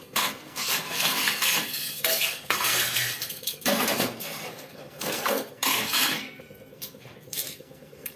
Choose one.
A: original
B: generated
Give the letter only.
B